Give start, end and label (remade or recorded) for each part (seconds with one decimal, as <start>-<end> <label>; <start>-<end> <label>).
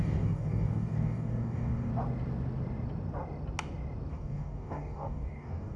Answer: 0.0-1.9 remade; 1.9-4.1 recorded; 4.1-5.8 remade